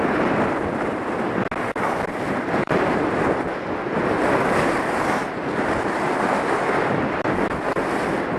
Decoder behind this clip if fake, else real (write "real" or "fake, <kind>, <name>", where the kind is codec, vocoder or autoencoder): real